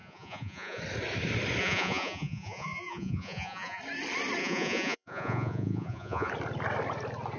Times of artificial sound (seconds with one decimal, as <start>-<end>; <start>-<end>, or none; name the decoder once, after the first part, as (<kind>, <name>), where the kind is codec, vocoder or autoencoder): 0.0-0.8 (vocoder, Vocos); 1.6-3.8; 4.4-6.3

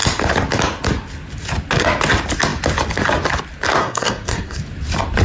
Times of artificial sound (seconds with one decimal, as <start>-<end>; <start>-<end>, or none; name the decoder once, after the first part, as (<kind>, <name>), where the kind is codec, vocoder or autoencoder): 3.8-4.6 (codec, SNAC)

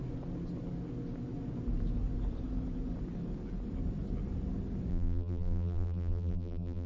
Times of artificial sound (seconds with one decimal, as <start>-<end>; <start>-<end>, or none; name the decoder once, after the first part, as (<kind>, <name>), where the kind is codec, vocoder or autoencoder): 4.9-6.9 (vocoder, BigVGAN v2)

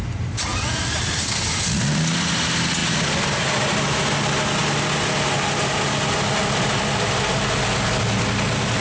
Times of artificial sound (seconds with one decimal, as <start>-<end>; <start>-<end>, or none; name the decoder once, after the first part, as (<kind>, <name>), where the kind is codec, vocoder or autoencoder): none

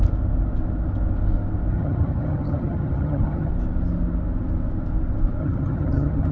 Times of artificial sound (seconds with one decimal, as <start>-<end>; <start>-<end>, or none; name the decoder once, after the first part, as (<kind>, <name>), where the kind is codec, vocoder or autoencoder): 1.7-3.5 (vocoder, HiFi-GAN); 5.4-6.3

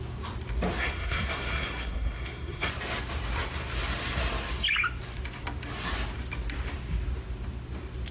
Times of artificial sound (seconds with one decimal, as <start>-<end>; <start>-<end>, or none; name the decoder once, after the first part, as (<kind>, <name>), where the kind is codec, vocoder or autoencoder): 0.8-2.7 (codec, SNAC)